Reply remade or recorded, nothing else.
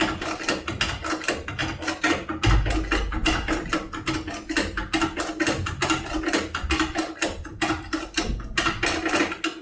recorded